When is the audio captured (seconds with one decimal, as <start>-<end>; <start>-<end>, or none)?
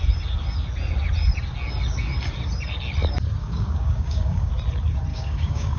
0.0-3.4; 4.5-5.1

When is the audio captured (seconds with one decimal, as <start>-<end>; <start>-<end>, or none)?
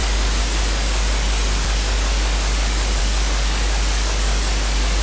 none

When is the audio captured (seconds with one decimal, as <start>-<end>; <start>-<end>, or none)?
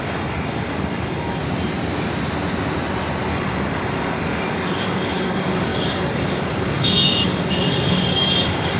1.4-3.3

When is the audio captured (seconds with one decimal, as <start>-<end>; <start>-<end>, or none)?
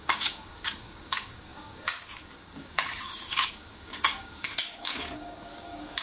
none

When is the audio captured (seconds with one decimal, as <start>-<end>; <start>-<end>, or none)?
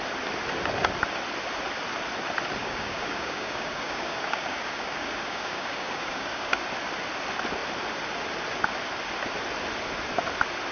0.0-2.6; 6.5-10.7